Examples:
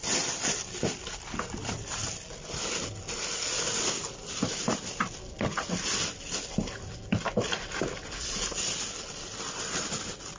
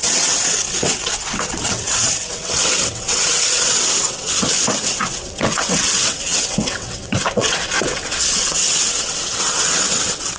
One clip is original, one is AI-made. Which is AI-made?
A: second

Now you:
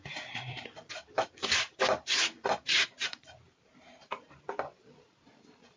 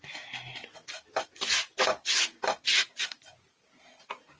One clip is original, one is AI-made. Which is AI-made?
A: first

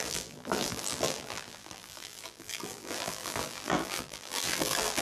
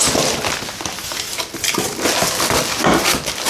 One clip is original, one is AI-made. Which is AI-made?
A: first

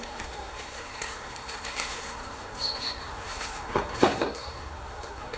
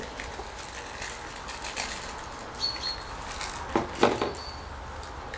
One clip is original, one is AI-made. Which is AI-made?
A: first